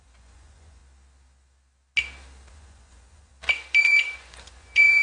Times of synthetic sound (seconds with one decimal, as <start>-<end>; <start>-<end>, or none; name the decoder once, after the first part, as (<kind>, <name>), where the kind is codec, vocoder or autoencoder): 0.0-0.8 (vocoder, Vocos); 2.5-3.3; 3.8-5.0